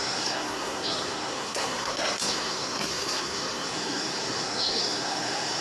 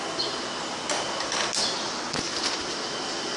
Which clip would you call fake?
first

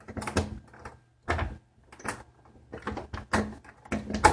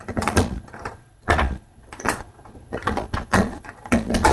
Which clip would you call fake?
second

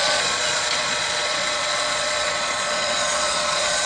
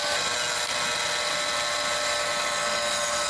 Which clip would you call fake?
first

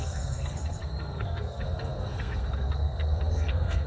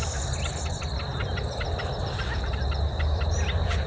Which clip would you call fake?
first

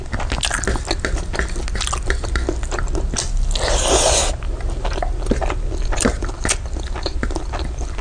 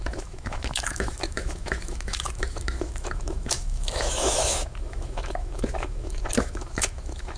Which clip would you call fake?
second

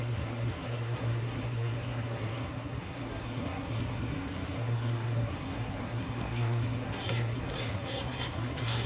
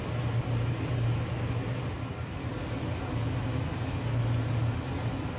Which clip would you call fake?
first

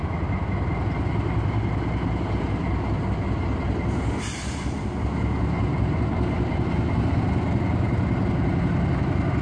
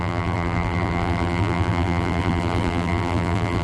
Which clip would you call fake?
second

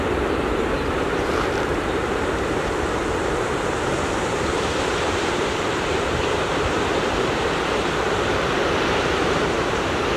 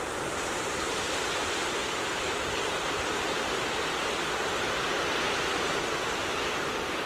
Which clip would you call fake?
first